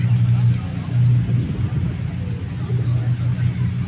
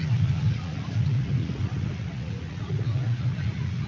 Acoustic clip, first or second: first